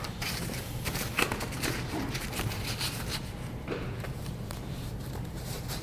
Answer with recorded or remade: remade